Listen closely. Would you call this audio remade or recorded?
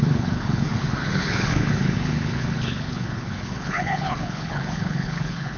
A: remade